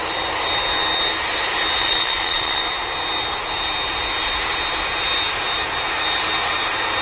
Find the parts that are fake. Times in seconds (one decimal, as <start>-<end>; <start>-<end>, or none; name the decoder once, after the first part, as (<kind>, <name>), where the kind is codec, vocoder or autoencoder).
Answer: 1.8-2.6 (vocoder, Vocos)